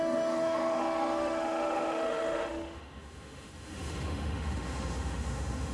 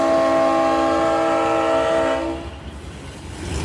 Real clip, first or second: second